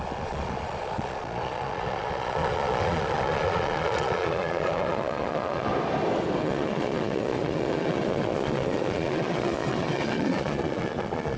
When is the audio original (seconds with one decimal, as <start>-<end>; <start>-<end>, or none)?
5.7-6.4